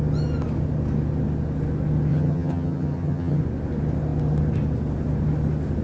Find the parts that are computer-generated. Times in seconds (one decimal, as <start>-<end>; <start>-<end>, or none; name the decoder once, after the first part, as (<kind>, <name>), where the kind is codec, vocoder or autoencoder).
2.1-3.4 (vocoder, HiFi-GAN)